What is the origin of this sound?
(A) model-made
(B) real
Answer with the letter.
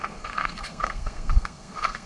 A